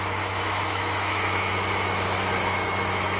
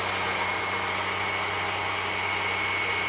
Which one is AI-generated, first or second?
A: first